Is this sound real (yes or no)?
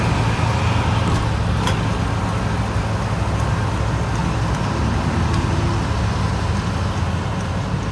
yes